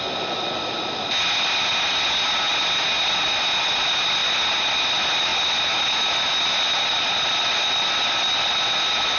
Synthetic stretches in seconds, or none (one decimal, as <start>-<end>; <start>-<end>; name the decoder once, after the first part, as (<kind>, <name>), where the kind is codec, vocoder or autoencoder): none